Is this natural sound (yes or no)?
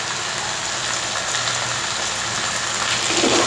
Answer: yes